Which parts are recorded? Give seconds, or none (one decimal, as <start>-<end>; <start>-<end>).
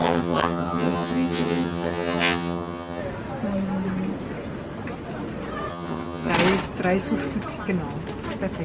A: 3.0-5.7; 6.3-8.6